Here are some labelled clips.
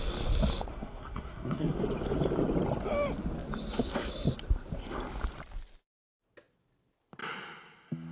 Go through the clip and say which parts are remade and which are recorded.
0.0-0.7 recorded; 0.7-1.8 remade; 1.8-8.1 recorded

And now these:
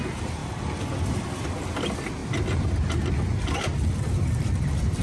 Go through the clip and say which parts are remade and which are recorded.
0.0-5.0 recorded